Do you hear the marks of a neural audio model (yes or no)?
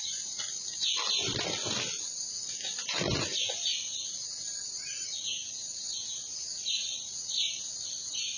no